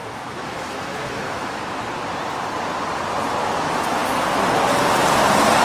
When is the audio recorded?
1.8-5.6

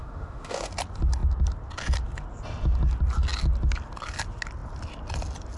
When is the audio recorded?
0.7-5.6

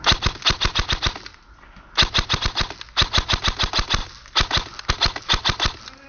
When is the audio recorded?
0.0-6.1

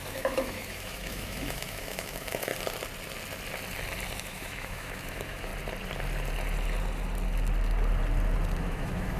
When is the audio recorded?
2.5-4.2; 5.5-8.6

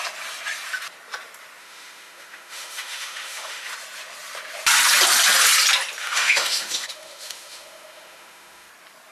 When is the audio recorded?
0.0-1.6; 3.7-6.0; 8.7-9.1